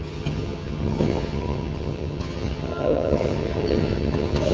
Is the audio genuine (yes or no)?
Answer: no